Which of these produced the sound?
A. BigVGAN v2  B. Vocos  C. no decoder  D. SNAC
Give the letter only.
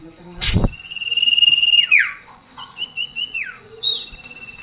B